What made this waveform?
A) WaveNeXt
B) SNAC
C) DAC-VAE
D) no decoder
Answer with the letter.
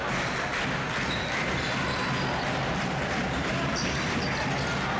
D